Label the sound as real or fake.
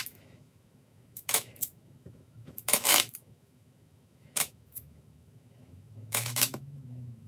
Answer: fake